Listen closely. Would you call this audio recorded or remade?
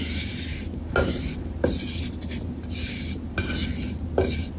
recorded